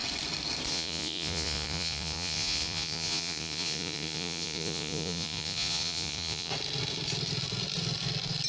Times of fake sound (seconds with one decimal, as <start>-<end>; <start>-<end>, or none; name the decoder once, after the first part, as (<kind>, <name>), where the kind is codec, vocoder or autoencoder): 0.7-6.5 (vocoder, Vocos)